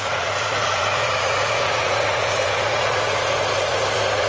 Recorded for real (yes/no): no